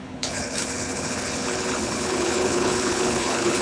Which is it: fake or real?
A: fake